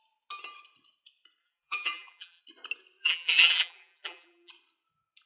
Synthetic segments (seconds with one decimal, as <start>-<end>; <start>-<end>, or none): 1.4-2.4; 3.0-4.5